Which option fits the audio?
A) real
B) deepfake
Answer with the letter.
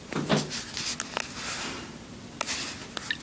A